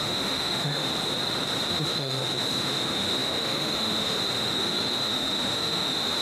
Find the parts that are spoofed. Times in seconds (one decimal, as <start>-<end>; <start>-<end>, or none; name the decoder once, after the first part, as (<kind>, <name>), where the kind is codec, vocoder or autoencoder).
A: 0.0-0.9 (autoencoder, DAC-VAE); 1.7-6.2